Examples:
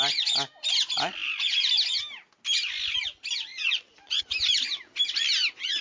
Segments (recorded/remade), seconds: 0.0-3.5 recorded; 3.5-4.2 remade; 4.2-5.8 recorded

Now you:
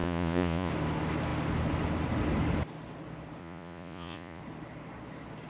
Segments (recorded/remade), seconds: 0.0-0.7 remade; 0.7-3.4 recorded; 3.4-4.4 remade; 4.4-5.5 recorded